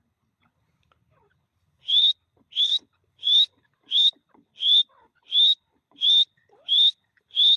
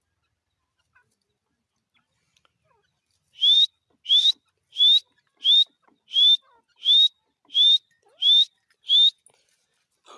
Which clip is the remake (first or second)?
first